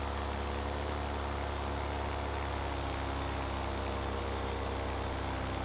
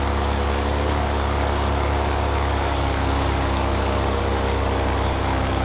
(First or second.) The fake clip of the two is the second